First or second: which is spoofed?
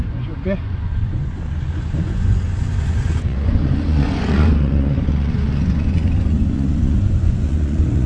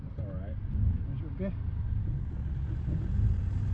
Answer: first